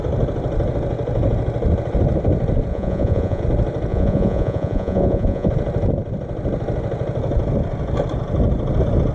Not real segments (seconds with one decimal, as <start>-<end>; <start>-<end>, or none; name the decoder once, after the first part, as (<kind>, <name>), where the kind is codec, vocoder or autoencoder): 2.7-3.4 (vocoder, Vocos); 3.9-5.5